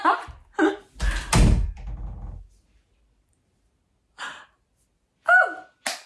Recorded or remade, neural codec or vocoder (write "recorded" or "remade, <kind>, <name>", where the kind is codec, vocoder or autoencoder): recorded